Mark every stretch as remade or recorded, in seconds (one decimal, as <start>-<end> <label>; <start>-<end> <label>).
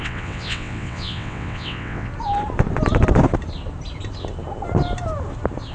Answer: 0.0-2.1 remade; 2.1-5.7 recorded